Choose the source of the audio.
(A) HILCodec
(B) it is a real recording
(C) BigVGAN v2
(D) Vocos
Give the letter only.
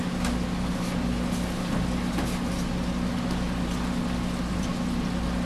B